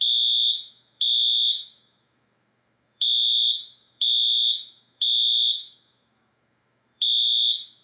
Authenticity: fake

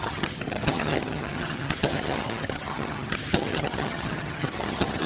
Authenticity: fake